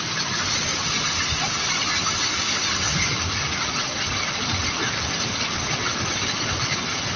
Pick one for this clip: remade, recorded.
recorded